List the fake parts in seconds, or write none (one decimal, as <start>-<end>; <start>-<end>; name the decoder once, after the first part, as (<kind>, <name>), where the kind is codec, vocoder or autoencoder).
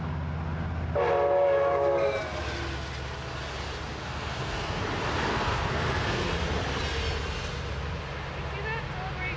4.0-4.8 (codec, SNAC); 5.3-6.3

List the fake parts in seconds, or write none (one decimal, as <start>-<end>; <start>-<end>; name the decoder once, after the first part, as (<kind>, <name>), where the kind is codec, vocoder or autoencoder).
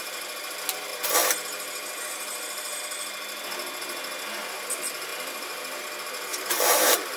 6.3-7.2 (vocoder, BigVGAN v2)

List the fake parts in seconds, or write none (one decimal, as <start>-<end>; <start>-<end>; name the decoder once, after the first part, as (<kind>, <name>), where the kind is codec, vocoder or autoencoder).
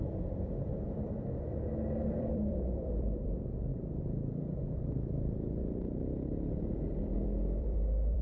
0.0-8.2 (vocoder, BigVGAN v2)